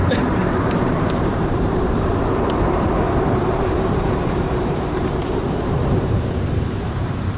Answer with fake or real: fake